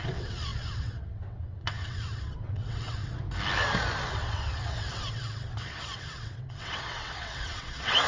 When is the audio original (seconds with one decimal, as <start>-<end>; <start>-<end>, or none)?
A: 3.0-4.1